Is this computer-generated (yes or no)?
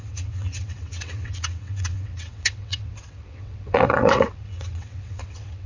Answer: yes